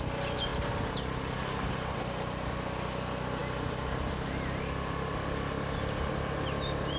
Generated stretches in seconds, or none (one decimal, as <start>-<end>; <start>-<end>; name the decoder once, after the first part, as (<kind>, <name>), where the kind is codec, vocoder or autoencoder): none